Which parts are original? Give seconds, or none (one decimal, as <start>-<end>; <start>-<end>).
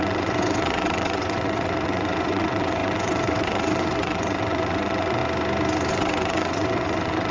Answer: 5.2-5.9